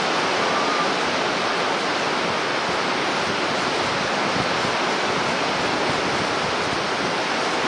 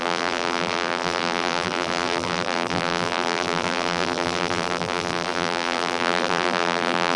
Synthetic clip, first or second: second